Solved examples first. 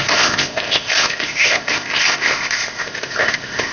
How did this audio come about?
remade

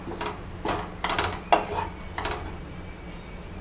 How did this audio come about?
recorded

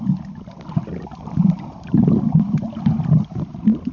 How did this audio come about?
recorded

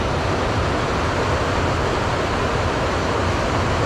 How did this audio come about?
recorded